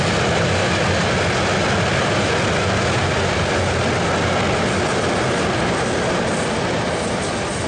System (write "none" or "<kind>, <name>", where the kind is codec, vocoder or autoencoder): none